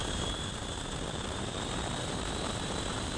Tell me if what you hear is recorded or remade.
remade